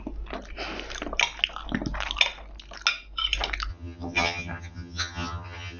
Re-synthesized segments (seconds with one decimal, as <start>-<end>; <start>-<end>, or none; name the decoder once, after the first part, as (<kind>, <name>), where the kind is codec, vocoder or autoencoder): 3.7-5.8 (vocoder, HiFi-GAN)